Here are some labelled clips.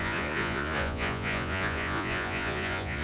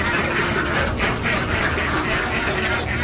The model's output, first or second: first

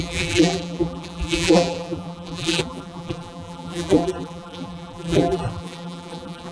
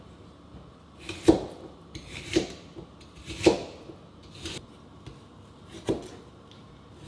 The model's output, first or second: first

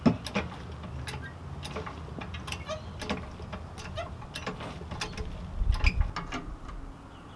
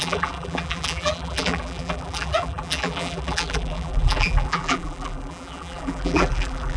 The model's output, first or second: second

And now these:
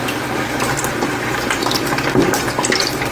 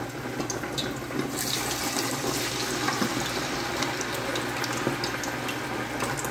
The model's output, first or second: first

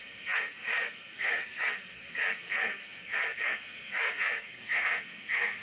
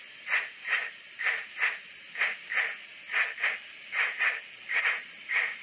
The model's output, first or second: first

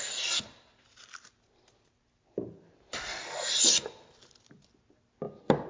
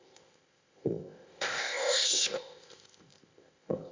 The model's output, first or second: second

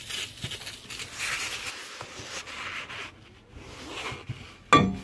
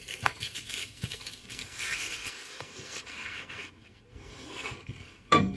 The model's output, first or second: second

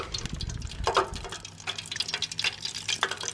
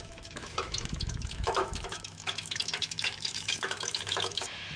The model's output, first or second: second